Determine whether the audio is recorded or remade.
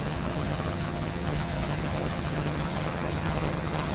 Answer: remade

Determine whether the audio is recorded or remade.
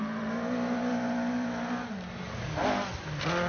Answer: recorded